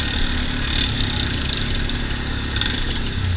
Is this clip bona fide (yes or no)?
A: yes